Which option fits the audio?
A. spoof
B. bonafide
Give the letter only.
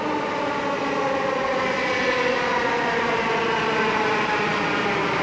B